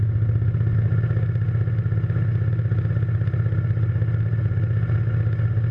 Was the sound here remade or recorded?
recorded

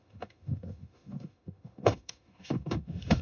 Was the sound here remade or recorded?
remade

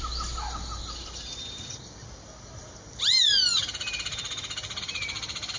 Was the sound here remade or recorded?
recorded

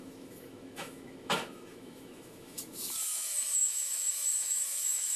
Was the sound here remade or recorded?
remade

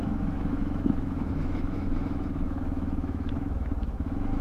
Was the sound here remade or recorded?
remade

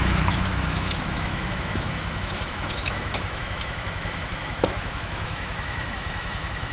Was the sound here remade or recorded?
remade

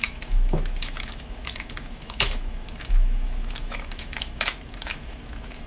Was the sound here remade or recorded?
remade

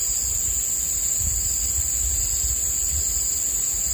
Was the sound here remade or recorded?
recorded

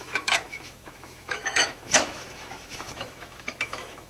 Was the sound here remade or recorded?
remade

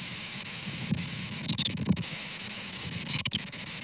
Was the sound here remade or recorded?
remade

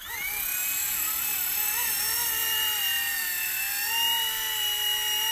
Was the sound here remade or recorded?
recorded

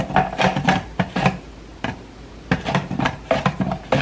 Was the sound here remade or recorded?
recorded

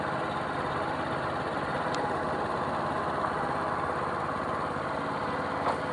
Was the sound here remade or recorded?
recorded